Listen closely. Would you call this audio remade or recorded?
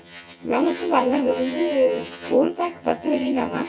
remade